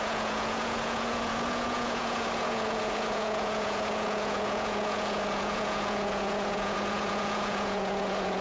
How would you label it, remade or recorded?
remade